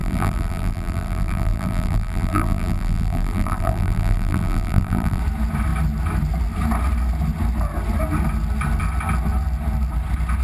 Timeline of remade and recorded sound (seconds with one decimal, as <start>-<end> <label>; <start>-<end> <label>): 0.0-5.2 remade; 5.2-10.4 recorded